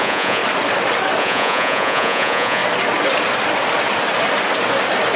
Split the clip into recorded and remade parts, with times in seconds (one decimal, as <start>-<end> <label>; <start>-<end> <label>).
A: 0.0-0.4 remade; 0.4-1.2 recorded; 1.2-2.6 remade; 2.6-5.2 recorded